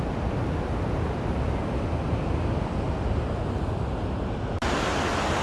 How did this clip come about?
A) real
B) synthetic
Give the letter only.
A